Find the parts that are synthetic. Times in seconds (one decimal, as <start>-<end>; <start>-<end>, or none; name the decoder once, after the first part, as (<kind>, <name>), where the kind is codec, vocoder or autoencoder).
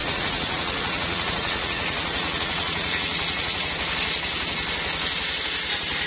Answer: 0.0-3.7 (vocoder, Vocos)